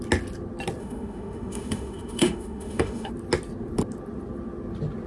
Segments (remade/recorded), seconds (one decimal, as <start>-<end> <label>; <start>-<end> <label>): 0.0-0.8 recorded; 0.8-3.1 remade; 3.1-5.1 recorded